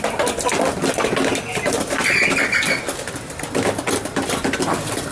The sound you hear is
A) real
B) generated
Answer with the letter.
A